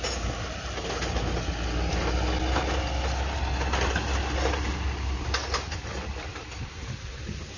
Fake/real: real